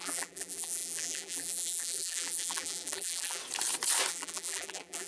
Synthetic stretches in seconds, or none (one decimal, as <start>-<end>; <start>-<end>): 0.0-3.4; 4.1-5.1